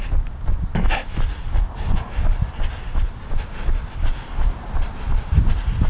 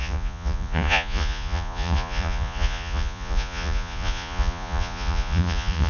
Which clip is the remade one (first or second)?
second